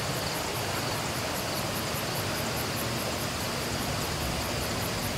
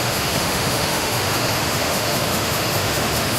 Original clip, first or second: first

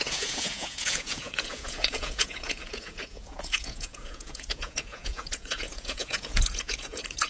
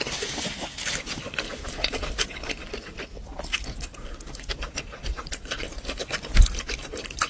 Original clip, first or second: second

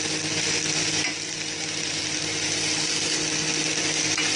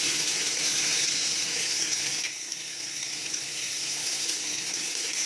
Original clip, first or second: first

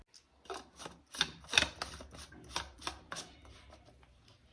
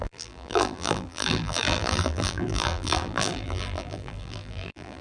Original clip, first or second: first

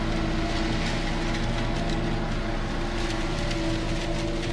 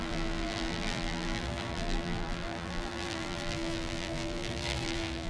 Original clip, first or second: first